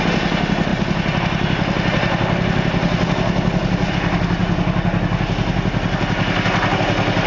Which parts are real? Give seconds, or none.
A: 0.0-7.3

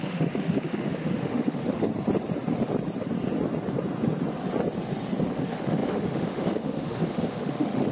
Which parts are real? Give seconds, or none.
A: 1.9-5.3

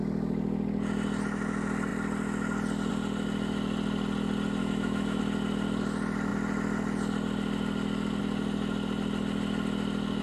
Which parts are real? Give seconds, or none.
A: 0.0-4.6; 5.2-10.2

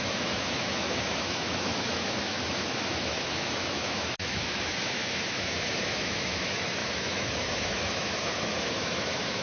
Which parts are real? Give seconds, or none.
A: none

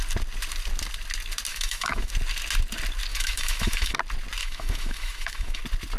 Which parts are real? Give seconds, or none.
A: 0.0-1.5; 2.1-3.1; 4.0-4.4; 5.6-6.0

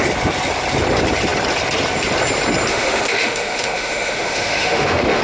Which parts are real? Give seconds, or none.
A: 0.0-2.7